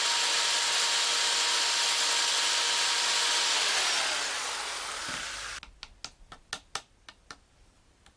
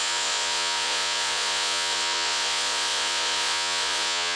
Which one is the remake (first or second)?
second